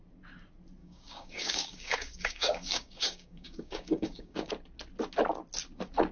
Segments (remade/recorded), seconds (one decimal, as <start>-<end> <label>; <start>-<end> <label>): 0.0-0.8 recorded; 0.8-4.5 remade; 4.5-6.1 recorded